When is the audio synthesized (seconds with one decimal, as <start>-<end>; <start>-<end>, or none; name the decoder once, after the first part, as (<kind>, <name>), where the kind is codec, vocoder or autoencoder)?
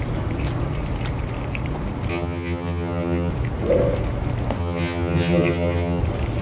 2.1-3.3 (vocoder, HiFi-GAN); 4.6-6.0